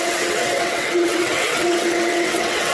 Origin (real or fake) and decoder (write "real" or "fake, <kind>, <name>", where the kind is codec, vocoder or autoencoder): fake, vocoder, WaveNeXt